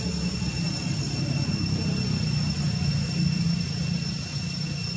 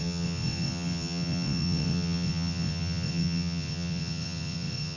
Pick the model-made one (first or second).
second